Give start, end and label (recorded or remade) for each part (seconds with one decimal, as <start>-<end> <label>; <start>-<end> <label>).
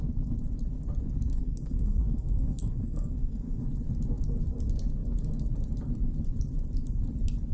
0.0-1.3 recorded; 1.3-3.6 remade; 3.6-7.5 recorded